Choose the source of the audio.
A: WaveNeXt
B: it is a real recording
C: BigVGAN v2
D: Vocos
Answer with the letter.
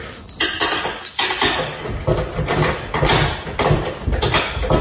B